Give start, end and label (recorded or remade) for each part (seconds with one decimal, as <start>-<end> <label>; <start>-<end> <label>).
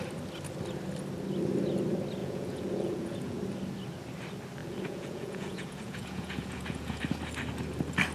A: 0.0-2.2 recorded; 2.2-3.4 remade; 3.4-4.6 recorded; 4.6-7.0 remade; 7.0-8.1 recorded